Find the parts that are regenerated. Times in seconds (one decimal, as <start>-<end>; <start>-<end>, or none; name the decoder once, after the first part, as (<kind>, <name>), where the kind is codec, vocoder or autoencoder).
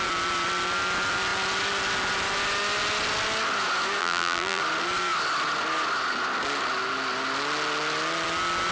4.0-4.6 (vocoder, BigVGAN v2)